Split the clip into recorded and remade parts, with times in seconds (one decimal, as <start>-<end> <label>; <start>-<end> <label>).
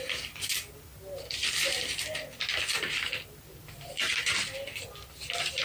0.0-5.6 recorded